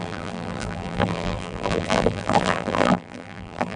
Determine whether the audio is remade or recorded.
remade